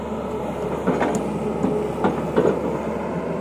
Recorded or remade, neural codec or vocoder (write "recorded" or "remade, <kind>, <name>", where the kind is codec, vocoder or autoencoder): recorded